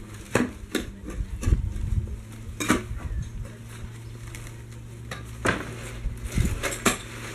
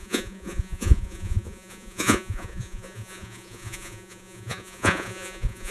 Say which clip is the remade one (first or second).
second